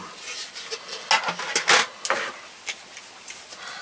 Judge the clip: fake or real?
real